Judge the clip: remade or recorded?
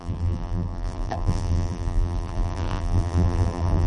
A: remade